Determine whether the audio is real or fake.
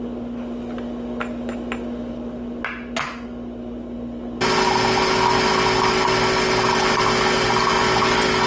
real